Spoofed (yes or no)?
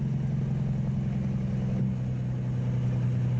no